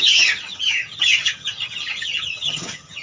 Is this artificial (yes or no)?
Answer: yes